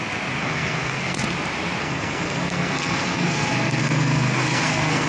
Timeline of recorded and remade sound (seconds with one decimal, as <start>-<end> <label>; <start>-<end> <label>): 0.0-0.4 recorded; 0.4-1.2 remade; 1.2-1.8 recorded; 1.8-5.1 remade